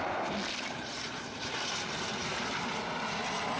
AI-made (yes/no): no